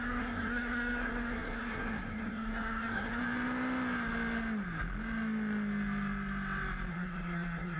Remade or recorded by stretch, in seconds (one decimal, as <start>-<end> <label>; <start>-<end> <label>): 0.0-3.2 remade; 3.2-6.9 recorded; 6.9-7.8 remade